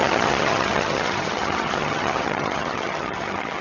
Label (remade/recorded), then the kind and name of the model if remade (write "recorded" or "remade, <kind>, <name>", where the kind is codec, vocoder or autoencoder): remade, vocoder, HiFi-GAN